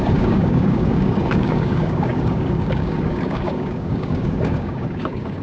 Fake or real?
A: fake